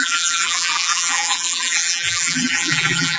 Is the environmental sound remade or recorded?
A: remade